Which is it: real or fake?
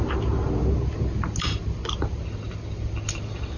real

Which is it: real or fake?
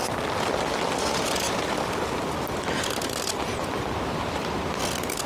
real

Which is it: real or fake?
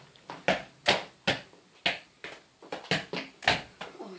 real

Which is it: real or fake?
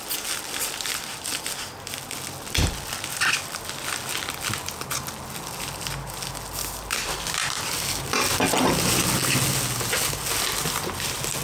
real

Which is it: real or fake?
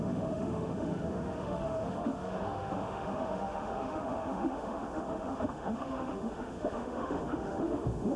fake